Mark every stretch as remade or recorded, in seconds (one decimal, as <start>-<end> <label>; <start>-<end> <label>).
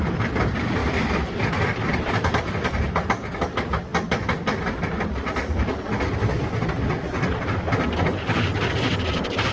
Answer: 0.0-9.5 recorded